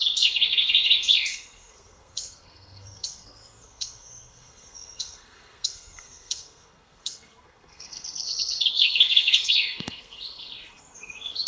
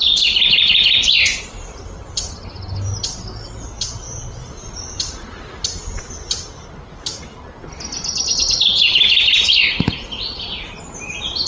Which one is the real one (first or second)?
second